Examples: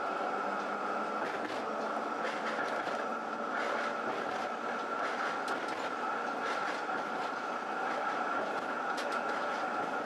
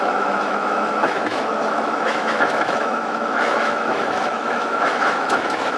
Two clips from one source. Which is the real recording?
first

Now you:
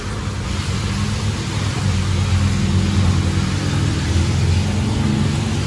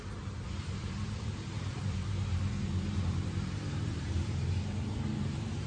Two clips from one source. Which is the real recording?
first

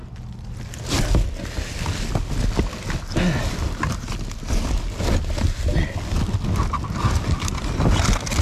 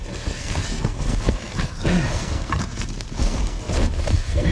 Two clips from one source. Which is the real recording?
first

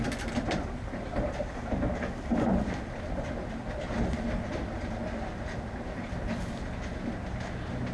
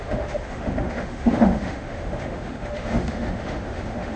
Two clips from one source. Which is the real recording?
first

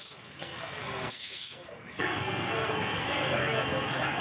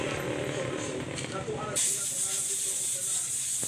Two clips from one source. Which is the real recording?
second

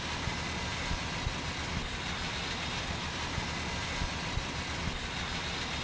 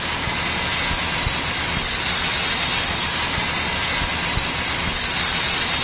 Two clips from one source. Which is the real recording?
second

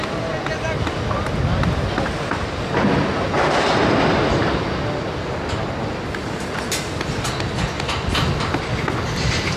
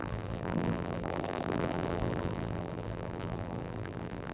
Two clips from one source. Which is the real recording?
first